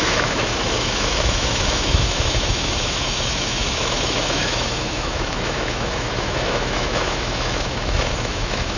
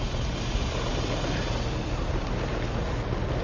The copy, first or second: first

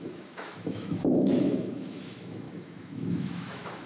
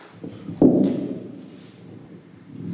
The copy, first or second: first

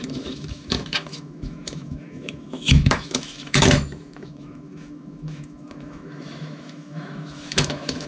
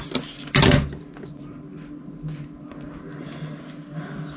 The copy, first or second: first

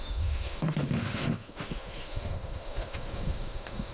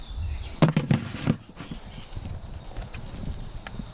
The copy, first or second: first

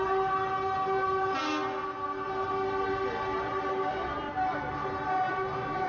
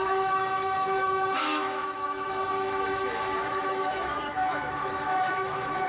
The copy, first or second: second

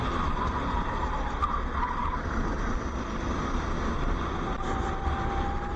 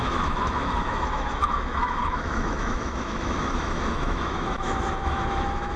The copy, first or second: second